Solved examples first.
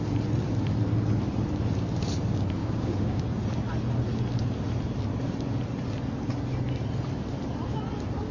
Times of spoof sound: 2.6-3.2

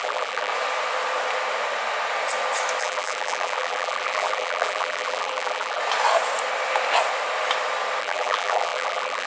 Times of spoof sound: 0.0-0.5; 2.8-5.8; 8.0-9.3

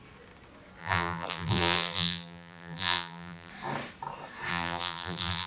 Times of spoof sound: 0.8-3.5; 4.5-5.5

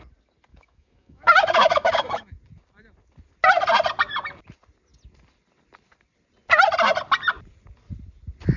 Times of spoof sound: 0.5-2.3

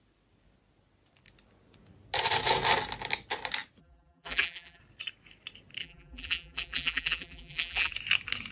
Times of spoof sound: 3.8-4.8; 5.8-7.9

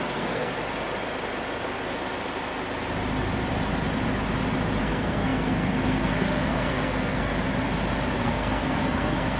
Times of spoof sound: 0.0-0.5; 4.8-7.3; 8.2-9.4